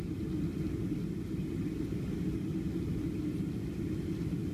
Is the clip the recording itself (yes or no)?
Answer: yes